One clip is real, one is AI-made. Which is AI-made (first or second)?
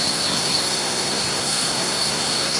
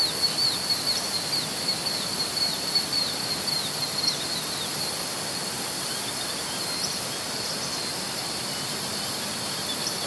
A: first